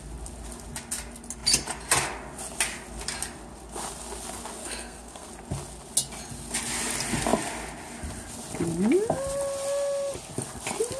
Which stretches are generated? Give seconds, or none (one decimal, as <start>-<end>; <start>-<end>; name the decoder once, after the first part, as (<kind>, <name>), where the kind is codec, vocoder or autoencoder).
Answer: 4.6-5.3 (codec, SNAC)